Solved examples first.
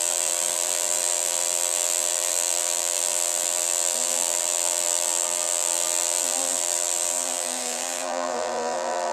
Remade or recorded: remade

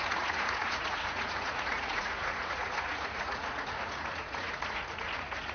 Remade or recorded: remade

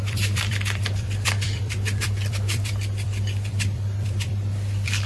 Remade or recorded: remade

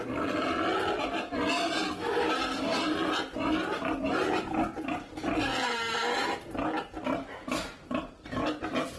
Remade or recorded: recorded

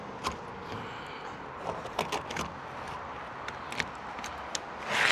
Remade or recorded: recorded